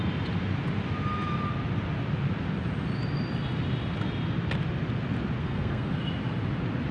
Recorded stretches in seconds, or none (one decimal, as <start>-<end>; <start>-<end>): 0.0-5.4; 5.9-6.9